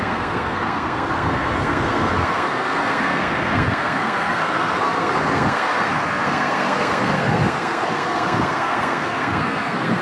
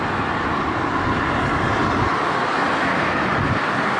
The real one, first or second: second